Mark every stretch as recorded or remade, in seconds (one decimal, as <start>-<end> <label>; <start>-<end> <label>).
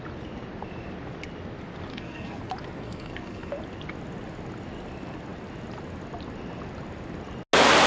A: 0.0-1.9 recorded; 1.9-2.4 remade; 2.4-2.8 recorded; 2.8-3.5 remade; 3.5-7.9 recorded